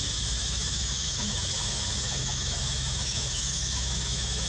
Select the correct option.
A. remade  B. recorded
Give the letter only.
A